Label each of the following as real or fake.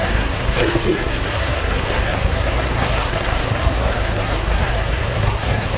fake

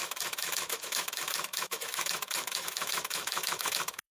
fake